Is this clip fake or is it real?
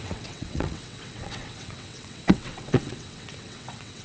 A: fake